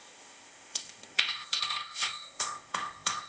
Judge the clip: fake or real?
fake